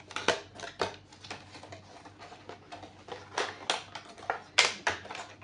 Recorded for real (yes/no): yes